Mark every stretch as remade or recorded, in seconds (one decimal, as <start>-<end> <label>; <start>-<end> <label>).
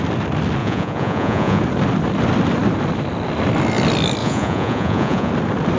0.0-0.6 recorded; 0.6-1.6 remade; 1.6-4.2 recorded; 4.2-5.3 remade; 5.3-5.8 recorded